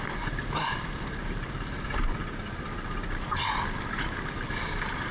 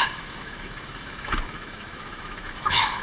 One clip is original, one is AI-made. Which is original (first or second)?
first